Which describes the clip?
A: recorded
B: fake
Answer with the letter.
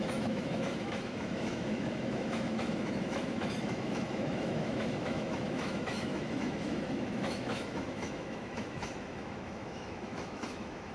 B